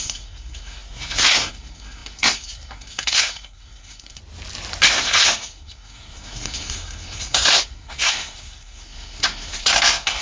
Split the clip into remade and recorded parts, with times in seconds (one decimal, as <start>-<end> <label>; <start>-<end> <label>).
0.0-4.2 remade; 4.2-4.9 recorded; 4.9-10.2 remade